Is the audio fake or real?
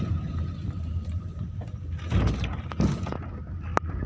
real